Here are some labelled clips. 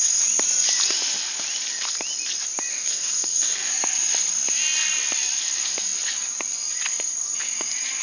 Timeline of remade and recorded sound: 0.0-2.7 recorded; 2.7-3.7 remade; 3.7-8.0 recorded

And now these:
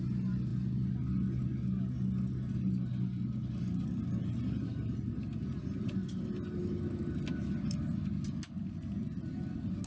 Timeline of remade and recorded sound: 0.0-9.9 recorded

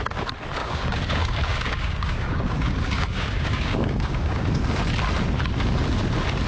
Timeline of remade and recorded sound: 0.0-0.6 recorded; 0.6-4.5 remade; 4.5-6.5 recorded

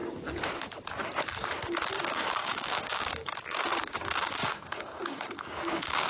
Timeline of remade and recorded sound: 0.0-1.9 recorded; 1.9-6.1 remade

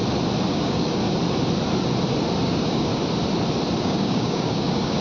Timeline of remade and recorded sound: 0.0-0.5 recorded; 0.5-1.0 remade; 1.0-2.4 recorded; 2.4-2.9 remade; 2.9-3.8 recorded; 3.8-5.0 remade

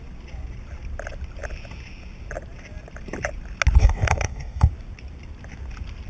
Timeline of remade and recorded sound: 0.0-3.8 recorded; 3.8-4.7 remade; 4.7-6.1 recorded

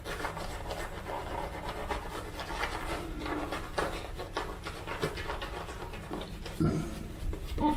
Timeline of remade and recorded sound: 0.0-7.8 recorded